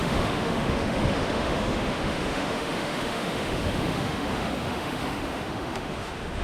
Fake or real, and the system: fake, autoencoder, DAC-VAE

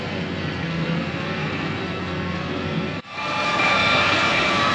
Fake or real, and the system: fake, codec, SNAC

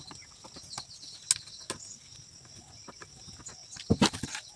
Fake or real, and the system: real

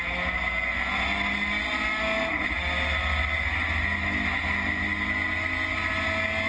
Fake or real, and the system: real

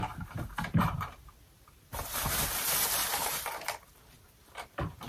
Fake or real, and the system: fake, vocoder, BigVGAN v2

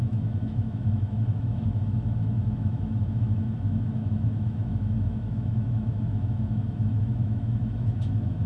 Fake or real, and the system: fake, autoencoder, DAC-VAE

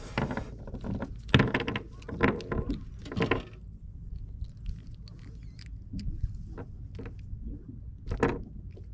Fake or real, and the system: real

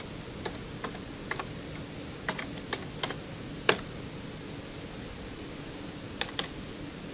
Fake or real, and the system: real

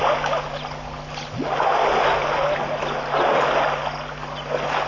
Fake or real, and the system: real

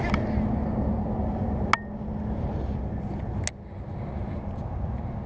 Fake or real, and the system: real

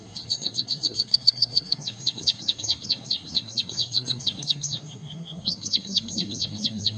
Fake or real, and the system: fake, codec, SNAC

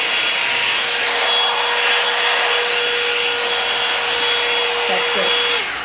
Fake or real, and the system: real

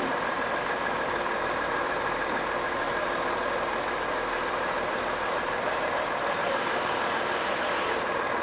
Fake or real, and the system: fake, vocoder, BigVGAN v2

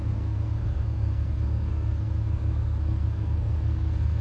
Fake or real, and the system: fake, codec, SNAC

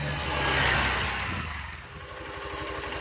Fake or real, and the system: real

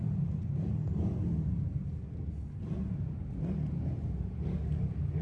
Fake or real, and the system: real